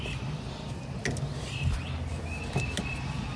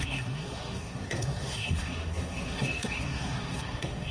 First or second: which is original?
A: first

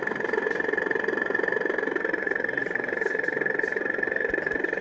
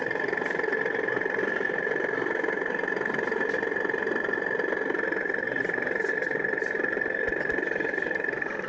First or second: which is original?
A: second